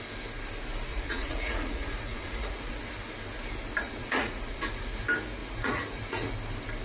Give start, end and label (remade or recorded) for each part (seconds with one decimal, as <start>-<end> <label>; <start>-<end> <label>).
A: 0.0-0.9 recorded; 0.9-2.7 remade; 2.7-3.8 recorded; 3.8-5.0 remade; 5.0-5.4 recorded; 5.4-6.3 remade; 6.3-6.8 recorded